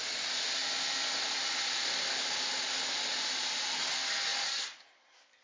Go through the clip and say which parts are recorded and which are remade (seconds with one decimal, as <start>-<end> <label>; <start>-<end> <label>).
0.0-5.4 recorded